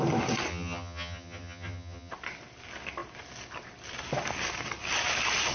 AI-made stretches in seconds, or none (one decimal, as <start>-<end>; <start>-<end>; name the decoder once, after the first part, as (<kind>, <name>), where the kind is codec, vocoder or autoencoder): 0.5-2.1 (vocoder, HiFi-GAN)